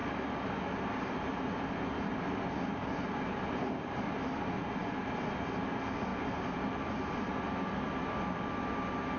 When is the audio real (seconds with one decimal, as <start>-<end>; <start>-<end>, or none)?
0.0-9.2